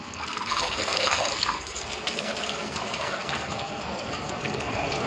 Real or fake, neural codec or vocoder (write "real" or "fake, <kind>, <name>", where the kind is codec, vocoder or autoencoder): fake, codec, SNAC